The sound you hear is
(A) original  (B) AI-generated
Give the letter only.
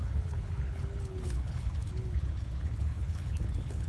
B